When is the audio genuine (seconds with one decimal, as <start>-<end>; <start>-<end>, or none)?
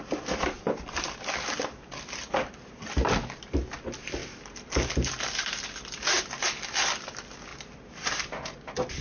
0.0-9.0